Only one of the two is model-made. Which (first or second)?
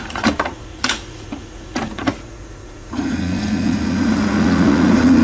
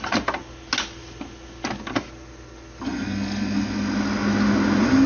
first